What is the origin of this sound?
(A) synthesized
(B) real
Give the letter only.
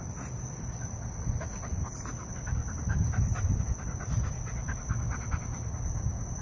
B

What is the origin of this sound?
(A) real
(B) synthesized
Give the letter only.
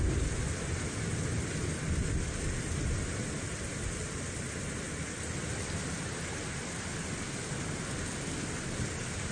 A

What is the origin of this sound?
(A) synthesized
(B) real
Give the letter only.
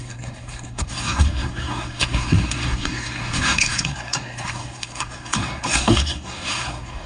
A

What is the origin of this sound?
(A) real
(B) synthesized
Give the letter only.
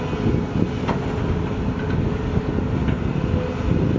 A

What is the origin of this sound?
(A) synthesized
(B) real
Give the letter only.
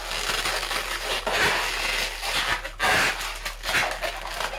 B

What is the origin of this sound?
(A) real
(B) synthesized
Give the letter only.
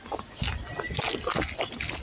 A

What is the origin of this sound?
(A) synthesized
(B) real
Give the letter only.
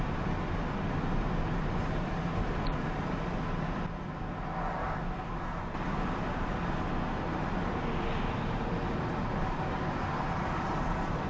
B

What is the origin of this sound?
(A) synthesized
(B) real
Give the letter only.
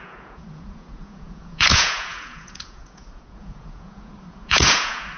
A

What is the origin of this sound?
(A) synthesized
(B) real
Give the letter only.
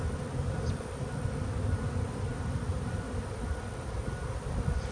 B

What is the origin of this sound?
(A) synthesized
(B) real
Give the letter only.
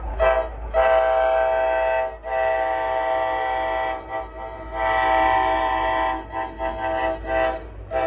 B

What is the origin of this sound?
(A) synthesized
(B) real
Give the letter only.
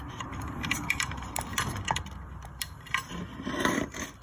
A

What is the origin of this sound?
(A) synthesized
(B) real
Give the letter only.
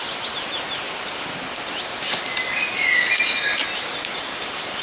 B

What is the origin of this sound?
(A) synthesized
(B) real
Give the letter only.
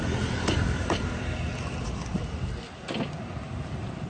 A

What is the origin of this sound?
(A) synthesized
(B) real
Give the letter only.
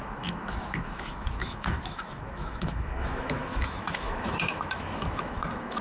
A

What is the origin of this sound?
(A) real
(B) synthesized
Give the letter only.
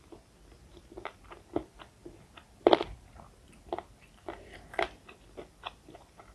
B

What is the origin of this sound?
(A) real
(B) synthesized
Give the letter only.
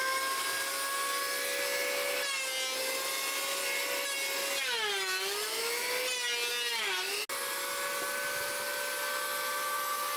A